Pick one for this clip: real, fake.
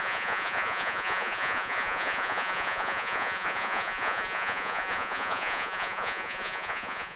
fake